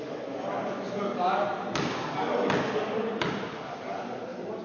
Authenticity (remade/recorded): recorded